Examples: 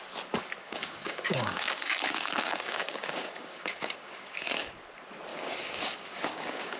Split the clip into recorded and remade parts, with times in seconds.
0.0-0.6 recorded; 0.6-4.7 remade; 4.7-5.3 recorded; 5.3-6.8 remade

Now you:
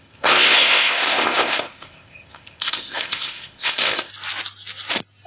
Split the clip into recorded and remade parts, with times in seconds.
0.0-4.1 remade; 4.1-5.3 recorded